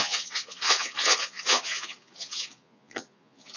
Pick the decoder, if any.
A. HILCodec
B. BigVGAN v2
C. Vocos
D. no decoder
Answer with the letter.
C